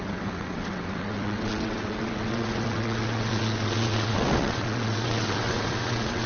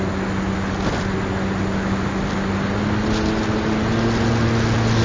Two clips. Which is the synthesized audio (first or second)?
first